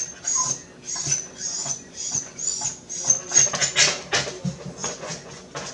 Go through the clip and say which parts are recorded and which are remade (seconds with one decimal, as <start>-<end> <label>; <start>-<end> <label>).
0.0-1.0 recorded; 1.0-2.6 remade; 2.6-4.8 recorded; 4.8-5.7 remade